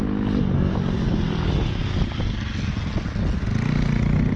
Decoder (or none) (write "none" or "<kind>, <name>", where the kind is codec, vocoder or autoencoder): none